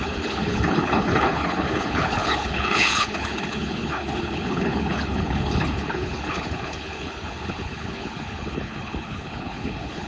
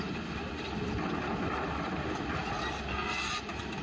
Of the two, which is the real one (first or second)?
second